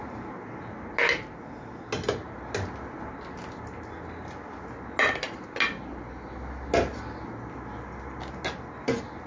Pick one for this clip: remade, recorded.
recorded